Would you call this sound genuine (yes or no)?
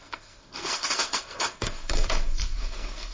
no